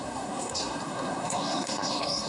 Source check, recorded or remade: remade